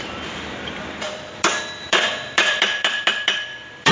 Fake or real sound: fake